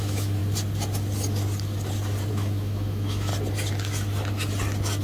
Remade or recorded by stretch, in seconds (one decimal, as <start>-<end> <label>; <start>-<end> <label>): 0.0-0.4 remade; 0.4-2.3 recorded; 2.3-3.3 remade; 3.3-5.0 recorded